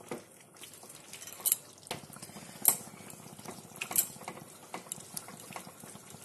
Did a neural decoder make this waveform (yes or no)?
no